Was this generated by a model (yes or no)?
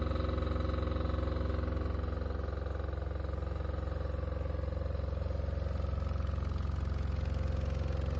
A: no